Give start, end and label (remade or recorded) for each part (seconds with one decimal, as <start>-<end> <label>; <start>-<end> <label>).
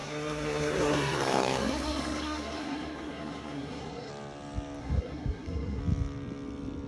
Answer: 0.0-4.1 remade; 4.1-4.8 recorded; 4.8-5.8 remade; 5.8-6.9 recorded